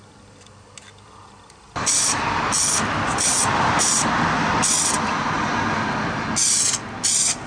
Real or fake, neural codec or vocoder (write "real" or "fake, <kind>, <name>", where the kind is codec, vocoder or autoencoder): real